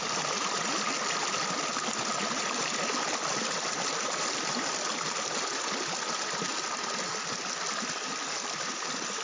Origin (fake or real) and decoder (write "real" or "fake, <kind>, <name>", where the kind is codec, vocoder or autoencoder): real